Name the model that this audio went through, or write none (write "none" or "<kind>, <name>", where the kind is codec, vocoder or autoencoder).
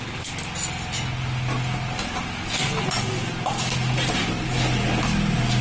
none